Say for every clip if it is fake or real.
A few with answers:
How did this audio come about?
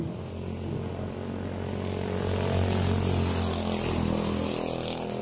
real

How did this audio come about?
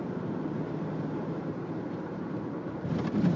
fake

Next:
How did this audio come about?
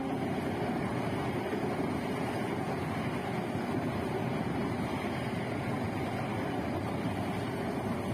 real